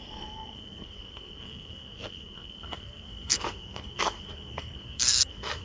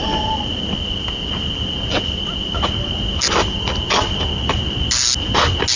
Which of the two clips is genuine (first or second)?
second